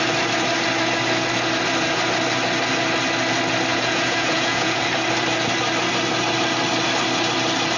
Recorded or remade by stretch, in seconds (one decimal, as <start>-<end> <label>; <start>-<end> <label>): 0.0-3.7 recorded; 3.7-4.8 remade; 4.8-7.8 recorded